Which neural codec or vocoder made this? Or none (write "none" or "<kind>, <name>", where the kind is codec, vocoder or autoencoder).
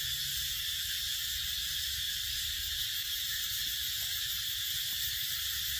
vocoder, BigVGAN v2